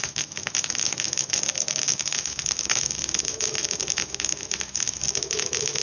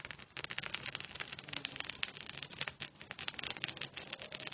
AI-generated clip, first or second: first